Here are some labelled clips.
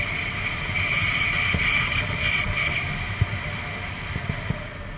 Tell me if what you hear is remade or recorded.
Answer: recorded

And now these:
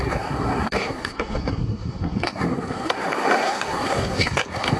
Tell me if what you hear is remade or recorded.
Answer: remade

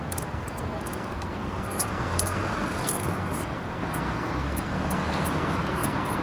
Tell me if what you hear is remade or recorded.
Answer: remade